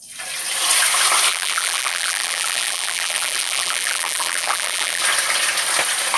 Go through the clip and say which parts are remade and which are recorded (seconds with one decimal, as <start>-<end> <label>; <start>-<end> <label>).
0.0-1.3 recorded; 1.3-5.0 remade; 5.0-6.2 recorded